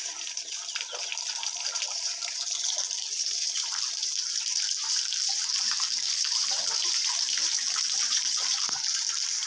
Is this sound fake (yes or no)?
yes